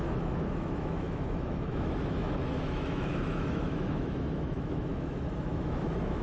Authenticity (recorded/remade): remade